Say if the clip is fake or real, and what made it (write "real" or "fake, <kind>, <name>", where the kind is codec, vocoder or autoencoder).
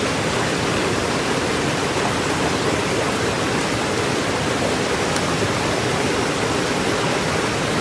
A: real